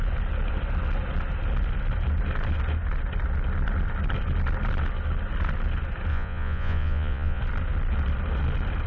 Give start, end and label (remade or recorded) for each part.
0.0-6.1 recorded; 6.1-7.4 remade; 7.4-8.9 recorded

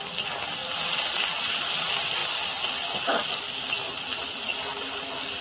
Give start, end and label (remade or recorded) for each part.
0.0-0.6 recorded; 0.6-1.3 remade; 1.3-3.8 recorded; 3.8-4.5 remade; 4.5-5.4 recorded